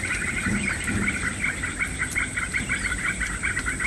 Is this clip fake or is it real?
fake